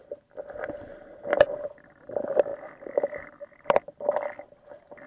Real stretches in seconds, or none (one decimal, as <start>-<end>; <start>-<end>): 0.0-0.9; 1.7-2.5; 3.9-5.1